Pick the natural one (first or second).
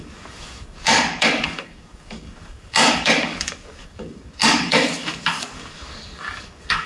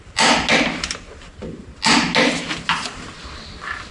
second